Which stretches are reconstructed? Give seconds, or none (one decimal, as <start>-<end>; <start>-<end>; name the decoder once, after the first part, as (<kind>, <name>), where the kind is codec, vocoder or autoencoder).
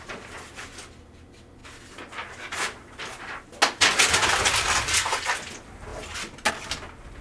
none